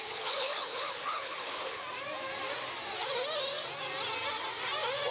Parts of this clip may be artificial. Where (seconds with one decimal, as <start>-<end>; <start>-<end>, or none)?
0.0-1.8